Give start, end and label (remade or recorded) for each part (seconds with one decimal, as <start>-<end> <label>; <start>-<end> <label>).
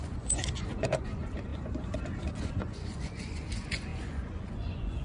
0.0-5.0 remade